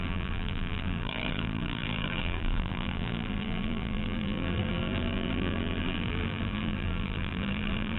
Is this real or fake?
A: fake